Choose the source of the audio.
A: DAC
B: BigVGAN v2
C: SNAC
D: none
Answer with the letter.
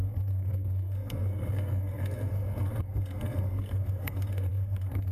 C